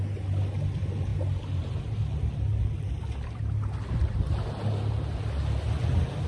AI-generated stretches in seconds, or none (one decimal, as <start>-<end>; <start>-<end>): none